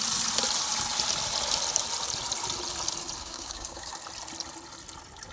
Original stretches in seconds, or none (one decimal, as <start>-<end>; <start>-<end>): 0.0-3.2; 3.9-5.3